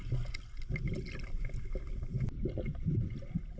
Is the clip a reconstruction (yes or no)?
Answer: no